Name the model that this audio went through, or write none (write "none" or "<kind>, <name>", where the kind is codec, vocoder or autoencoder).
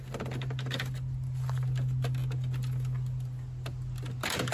none